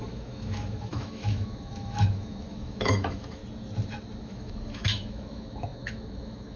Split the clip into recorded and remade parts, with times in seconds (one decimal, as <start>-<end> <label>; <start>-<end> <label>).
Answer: 0.0-3.4 remade; 3.4-4.2 recorded; 4.2-6.6 remade